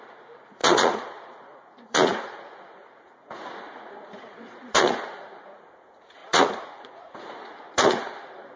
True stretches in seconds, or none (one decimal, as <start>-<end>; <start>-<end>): none